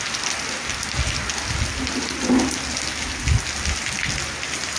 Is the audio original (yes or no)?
yes